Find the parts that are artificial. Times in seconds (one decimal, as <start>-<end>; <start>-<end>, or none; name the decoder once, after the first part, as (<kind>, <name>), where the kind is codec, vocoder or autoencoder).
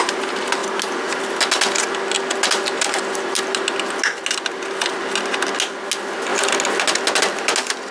none